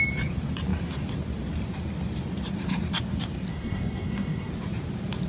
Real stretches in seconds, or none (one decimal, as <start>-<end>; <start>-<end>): 0.0-3.5; 4.5-5.3